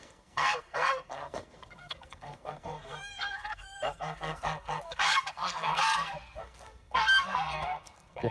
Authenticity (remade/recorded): remade